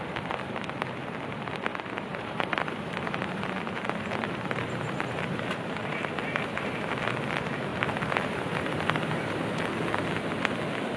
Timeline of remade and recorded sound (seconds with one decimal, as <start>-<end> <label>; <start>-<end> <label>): 0.0-1.7 recorded; 1.7-6.9 remade; 6.9-7.7 recorded; 7.7-9.5 remade; 9.5-11.0 recorded